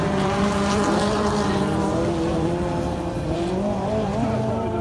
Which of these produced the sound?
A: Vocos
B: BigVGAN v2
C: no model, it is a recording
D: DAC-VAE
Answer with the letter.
B